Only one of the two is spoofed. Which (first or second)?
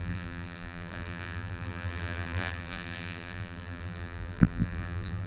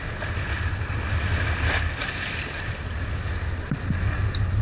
first